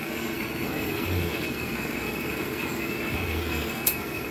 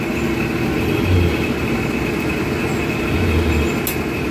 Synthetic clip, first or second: first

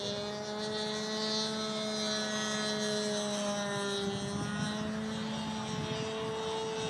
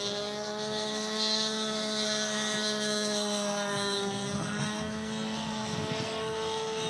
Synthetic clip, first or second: second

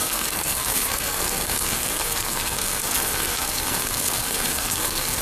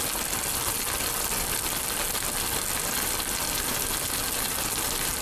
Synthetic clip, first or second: first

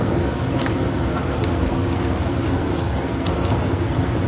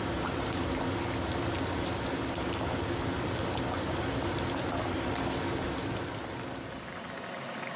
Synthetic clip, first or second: first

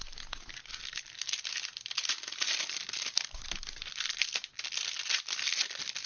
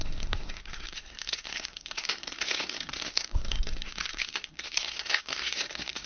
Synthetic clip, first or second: second